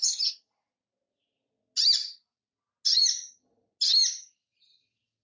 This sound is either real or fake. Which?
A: real